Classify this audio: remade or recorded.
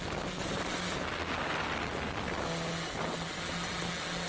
recorded